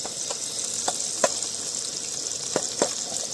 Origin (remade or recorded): recorded